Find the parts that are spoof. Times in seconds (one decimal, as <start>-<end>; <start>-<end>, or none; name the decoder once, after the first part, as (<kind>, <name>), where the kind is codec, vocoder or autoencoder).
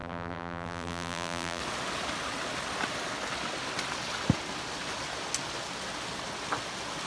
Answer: 0.0-1.6 (vocoder, BigVGAN v2)